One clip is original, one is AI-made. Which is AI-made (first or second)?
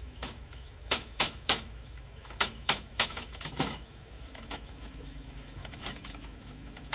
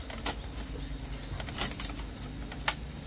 first